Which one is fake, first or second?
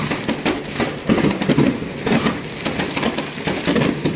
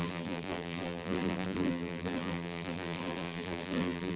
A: second